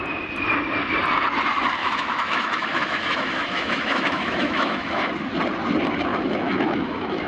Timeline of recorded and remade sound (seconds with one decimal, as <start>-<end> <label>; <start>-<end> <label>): 0.0-1.8 recorded; 1.8-5.1 remade; 5.1-6.1 recorded; 6.1-7.3 remade